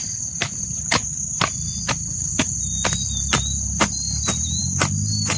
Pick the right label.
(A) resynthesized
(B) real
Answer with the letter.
B